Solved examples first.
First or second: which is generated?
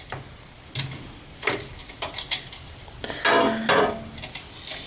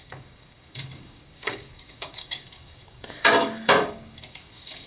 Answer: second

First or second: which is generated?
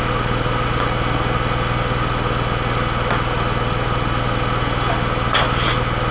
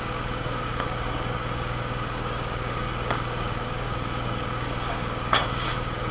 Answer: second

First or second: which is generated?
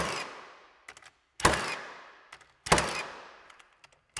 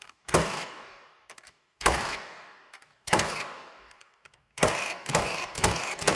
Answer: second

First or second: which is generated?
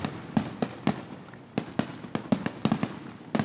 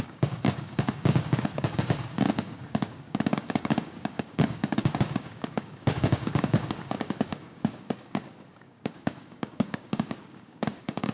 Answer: second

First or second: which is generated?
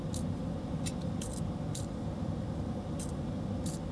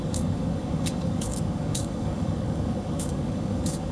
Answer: second